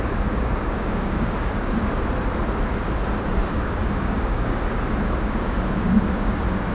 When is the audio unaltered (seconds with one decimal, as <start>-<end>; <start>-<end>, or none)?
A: 1.8-3.3